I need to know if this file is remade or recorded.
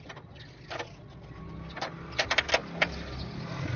recorded